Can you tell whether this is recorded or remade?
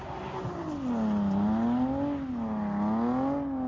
recorded